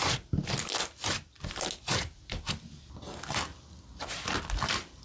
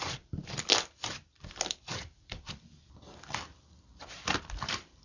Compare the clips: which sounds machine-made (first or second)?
second